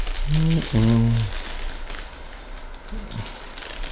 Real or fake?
real